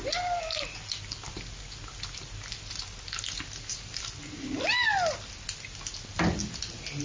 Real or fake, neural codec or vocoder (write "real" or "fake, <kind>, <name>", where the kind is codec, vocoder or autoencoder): real